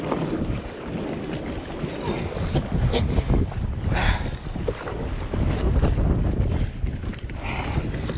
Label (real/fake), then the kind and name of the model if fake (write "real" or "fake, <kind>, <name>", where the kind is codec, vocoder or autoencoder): real